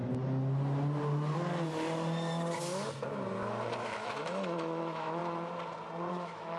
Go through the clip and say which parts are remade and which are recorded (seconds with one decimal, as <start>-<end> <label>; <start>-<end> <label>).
0.0-3.8 recorded; 3.8-5.2 remade; 5.2-6.1 recorded; 6.1-6.6 remade

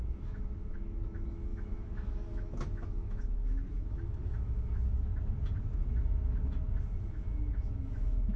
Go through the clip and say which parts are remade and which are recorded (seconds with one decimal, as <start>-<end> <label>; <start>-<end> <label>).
0.0-5.1 remade; 5.1-6.8 recorded; 6.8-8.4 remade

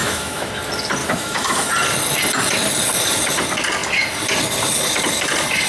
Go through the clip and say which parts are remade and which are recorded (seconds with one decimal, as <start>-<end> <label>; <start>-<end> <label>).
0.0-0.5 remade; 0.5-1.0 recorded; 1.0-1.7 remade; 1.7-5.7 recorded

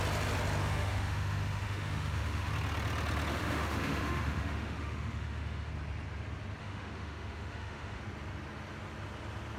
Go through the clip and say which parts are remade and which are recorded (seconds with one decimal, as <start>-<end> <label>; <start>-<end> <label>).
0.0-0.6 recorded; 0.6-2.5 remade; 2.5-3.3 recorded; 3.3-5.7 remade; 5.7-6.6 recorded; 6.6-8.0 remade; 8.0-9.6 recorded

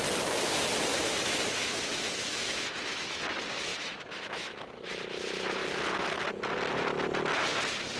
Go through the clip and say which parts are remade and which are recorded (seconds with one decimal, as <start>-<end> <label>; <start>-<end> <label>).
0.0-0.9 recorded; 0.9-3.2 remade; 3.2-3.7 recorded; 3.7-4.9 remade; 4.9-8.0 recorded

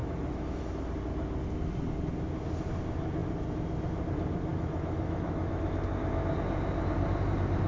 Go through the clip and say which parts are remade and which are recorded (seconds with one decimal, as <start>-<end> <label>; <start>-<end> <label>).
0.0-0.7 remade; 0.7-4.5 recorded; 4.5-5.6 remade; 5.6-7.7 recorded

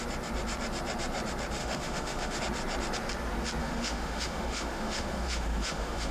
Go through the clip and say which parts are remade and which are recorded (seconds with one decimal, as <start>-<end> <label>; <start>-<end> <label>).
0.0-1.6 recorded; 1.6-2.4 remade; 2.4-3.6 recorded; 3.6-6.1 remade